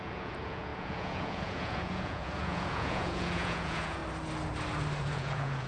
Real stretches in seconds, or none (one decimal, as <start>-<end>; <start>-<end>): 4.0-5.0